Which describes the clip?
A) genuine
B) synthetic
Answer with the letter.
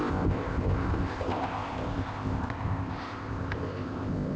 B